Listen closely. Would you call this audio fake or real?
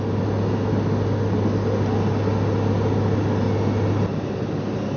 real